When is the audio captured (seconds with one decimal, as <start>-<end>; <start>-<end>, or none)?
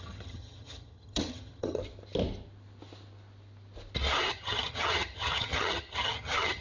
1.8-4.3